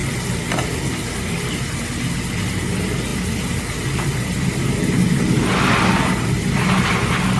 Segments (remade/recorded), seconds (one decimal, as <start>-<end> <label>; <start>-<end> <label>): 0.0-7.4 recorded